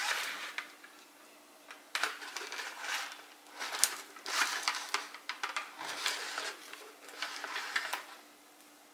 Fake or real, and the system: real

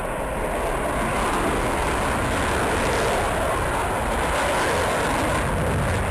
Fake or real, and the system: real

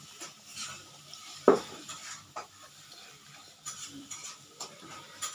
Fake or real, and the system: fake, vocoder, BigVGAN v2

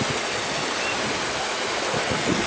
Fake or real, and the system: real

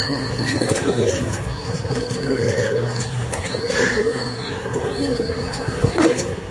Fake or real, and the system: fake, codec, SNAC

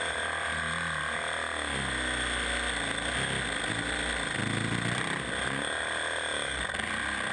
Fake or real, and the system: real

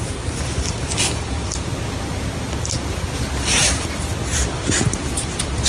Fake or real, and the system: real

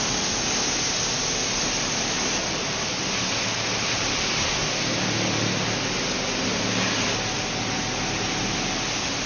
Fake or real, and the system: real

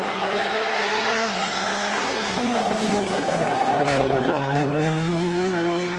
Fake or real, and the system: fake, codec, SNAC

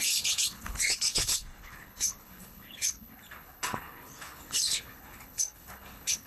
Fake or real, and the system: fake, codec, HILCodec